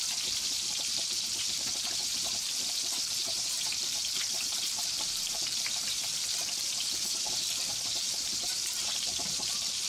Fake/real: fake